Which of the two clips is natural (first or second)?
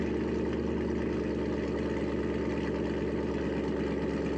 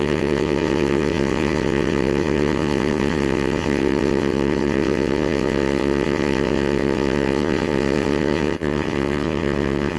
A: first